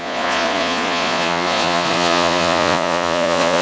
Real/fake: fake